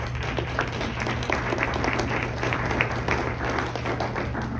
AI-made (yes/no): no